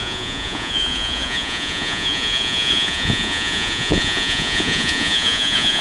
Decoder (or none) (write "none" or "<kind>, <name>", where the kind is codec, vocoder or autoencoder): vocoder, Vocos